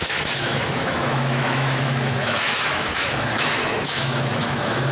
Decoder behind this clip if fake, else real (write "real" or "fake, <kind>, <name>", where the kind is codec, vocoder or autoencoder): fake, autoencoder, DAC-VAE